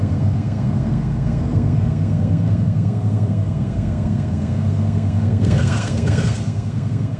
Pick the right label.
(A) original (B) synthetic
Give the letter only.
B